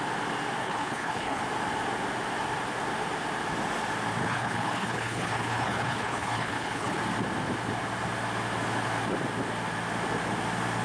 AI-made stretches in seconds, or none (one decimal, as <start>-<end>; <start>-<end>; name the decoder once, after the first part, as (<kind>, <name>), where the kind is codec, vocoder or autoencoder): 0.6-1.4 (codec, HILCodec); 4.2-7.0